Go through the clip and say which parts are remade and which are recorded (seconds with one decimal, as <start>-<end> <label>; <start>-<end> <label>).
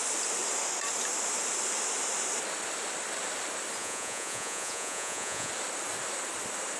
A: 0.0-3.8 recorded; 3.8-5.5 remade; 5.5-6.8 recorded